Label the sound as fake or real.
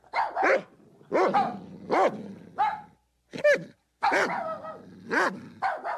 real